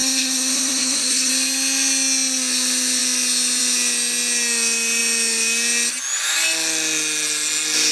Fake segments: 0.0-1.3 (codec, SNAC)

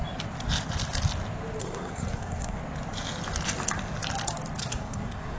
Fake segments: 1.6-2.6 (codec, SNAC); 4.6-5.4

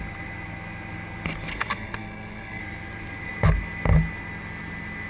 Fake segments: 1.5-2.6 (codec, SNAC)